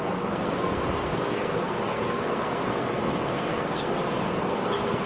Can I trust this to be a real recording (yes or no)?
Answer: no